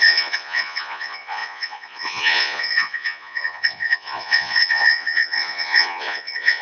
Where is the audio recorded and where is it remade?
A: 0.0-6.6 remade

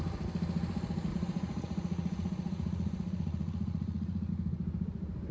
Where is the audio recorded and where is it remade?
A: 0.0-1.1 recorded; 1.1-4.3 remade; 4.3-5.3 recorded

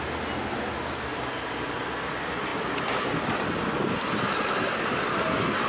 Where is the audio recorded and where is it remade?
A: 0.0-5.7 recorded